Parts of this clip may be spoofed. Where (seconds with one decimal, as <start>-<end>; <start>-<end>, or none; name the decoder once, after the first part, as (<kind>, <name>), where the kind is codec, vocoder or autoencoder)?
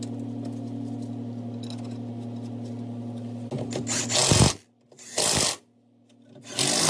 none